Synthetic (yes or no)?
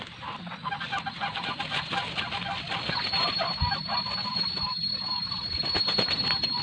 no